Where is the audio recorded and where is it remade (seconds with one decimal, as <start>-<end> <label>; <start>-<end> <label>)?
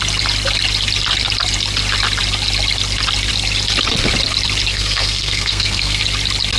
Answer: 0.0-4.7 recorded; 4.7-6.0 remade; 6.0-6.6 recorded